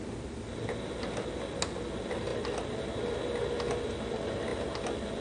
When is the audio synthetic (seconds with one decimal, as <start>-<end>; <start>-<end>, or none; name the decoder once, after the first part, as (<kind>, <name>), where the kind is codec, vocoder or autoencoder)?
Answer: none